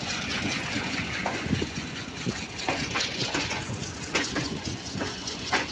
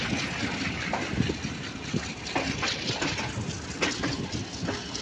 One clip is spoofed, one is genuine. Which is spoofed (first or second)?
first